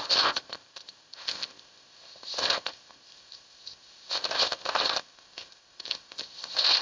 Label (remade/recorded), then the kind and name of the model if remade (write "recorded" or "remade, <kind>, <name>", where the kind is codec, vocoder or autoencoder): remade, codec, ZipCodec